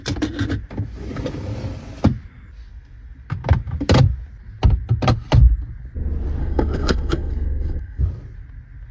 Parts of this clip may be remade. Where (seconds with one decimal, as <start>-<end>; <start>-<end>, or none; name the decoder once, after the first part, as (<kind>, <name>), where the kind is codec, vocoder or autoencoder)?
6.4-8.0 (codec, SNAC)